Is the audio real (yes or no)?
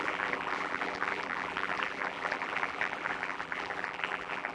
no